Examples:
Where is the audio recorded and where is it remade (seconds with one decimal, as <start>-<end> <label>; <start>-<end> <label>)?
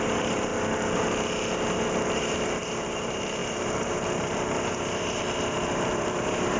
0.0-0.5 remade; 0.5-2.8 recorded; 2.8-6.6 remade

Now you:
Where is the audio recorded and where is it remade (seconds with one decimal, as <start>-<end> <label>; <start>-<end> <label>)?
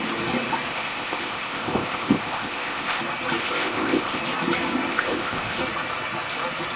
0.0-0.7 recorded; 0.7-3.0 remade; 3.0-3.4 recorded; 3.4-4.2 remade; 4.2-4.9 recorded; 4.9-5.6 remade; 5.6-6.8 recorded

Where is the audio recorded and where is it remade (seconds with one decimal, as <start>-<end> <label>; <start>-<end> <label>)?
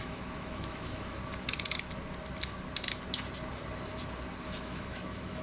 0.0-1.2 remade; 1.2-4.4 recorded; 4.4-5.4 remade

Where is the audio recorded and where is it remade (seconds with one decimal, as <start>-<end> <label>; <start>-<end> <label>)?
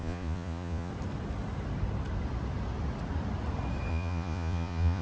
0.0-0.9 remade; 0.9-3.9 recorded; 3.9-5.0 remade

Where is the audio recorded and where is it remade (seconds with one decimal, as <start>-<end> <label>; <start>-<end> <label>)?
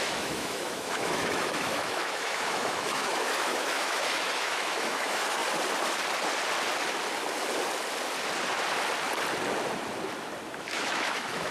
0.0-5.4 remade; 5.4-10.6 recorded; 10.6-11.5 remade